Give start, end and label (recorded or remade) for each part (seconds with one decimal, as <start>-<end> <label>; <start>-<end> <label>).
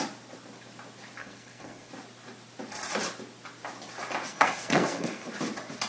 0.0-1.2 recorded; 1.2-1.9 remade; 1.9-4.3 recorded; 4.3-5.3 remade; 5.3-5.9 recorded